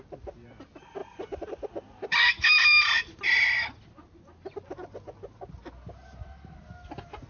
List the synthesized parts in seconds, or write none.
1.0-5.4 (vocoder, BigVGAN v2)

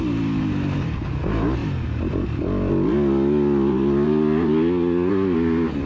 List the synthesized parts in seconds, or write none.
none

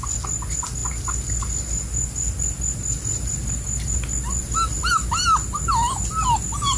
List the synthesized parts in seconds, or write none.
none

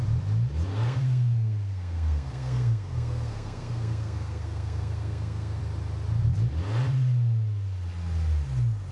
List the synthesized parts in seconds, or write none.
0.7-5.6 (codec, SNAC)

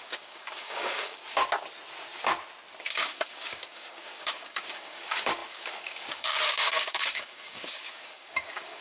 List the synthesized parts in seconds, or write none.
0.0-1.2 (codec, DAC); 2.8-8.8

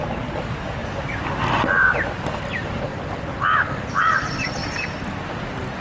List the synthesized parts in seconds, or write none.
0.0-0.8 (vocoder, BigVGAN v2); 2.5-4.6; 5.3-5.8